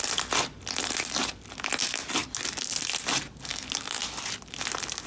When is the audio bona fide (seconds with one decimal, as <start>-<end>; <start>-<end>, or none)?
0.0-5.1